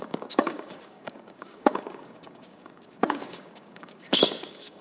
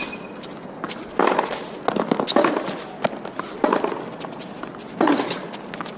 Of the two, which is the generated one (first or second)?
first